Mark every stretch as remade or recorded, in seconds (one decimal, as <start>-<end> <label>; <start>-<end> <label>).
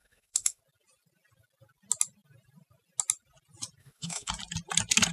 0.0-0.6 remade; 0.6-3.8 recorded; 3.8-4.3 remade; 4.3-5.1 recorded